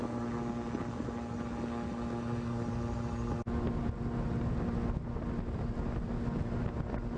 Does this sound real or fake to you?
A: real